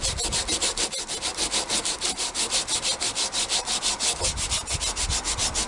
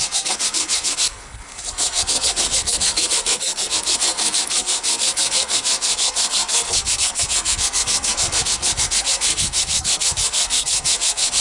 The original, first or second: first